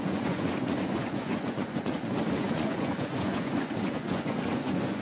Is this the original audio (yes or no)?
no